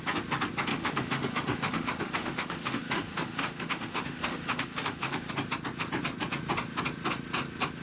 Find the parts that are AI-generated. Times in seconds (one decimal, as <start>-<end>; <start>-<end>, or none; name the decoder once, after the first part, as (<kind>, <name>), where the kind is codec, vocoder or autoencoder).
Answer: 0.7-5.3 (autoencoder, DAC-VAE)